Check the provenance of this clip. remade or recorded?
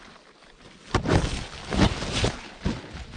recorded